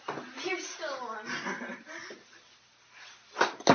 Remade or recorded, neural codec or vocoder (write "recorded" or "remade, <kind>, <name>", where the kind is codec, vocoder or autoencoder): recorded